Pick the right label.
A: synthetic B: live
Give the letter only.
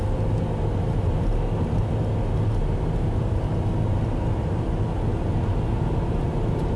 B